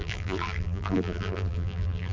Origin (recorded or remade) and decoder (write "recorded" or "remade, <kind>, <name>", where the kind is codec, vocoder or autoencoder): remade, vocoder, BigVGAN v2